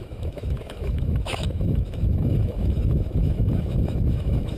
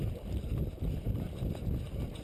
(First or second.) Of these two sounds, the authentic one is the second